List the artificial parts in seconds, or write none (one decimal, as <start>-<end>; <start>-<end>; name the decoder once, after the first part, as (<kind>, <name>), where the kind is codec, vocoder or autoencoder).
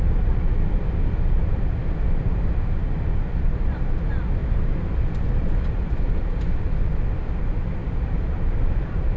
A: 4.4-7.3 (vocoder, BigVGAN v2); 7.8-9.2